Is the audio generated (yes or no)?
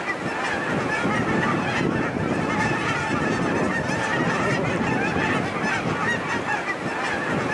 no